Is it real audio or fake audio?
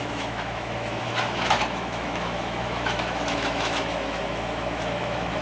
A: fake